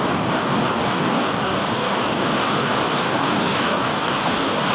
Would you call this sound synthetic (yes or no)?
yes